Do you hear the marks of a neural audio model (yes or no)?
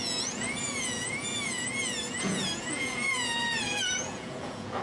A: yes